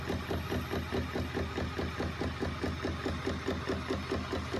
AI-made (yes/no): no